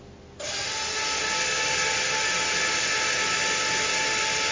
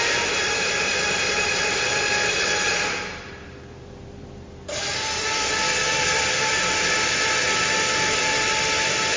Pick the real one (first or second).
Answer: first